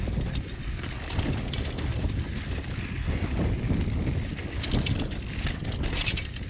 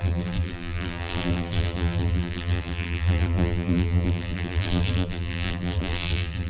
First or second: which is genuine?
first